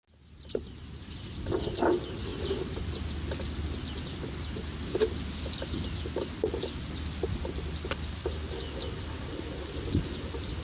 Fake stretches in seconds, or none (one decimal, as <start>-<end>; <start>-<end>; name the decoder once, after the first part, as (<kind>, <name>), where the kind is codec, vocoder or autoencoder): none